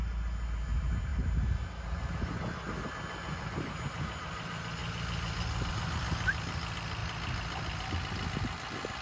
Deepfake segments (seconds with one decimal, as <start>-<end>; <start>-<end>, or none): none